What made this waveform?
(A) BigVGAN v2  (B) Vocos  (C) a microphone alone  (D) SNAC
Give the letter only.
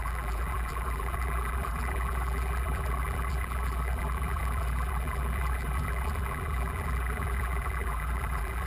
A